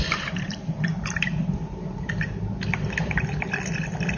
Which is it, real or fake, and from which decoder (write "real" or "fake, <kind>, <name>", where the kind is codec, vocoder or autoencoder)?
real